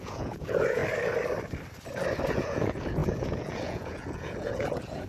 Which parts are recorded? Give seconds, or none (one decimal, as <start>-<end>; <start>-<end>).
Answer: 0.8-2.3